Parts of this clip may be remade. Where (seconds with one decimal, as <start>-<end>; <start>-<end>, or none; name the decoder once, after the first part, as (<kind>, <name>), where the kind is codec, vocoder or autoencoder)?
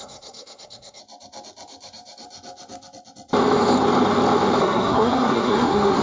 0.0-1.0 (codec, SNAC); 4.6-6.0